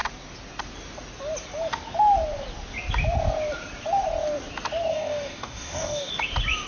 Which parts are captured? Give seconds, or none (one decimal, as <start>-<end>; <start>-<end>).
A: 0.0-4.9; 6.1-6.7